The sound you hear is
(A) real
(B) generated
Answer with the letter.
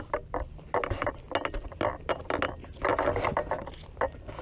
A